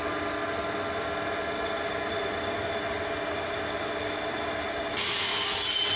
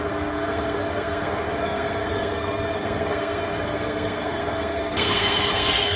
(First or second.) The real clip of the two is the first